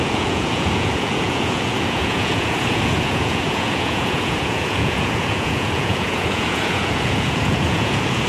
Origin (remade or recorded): remade